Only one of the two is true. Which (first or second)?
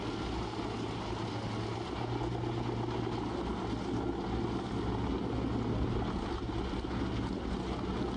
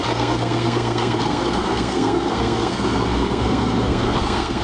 first